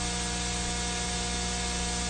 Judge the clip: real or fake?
real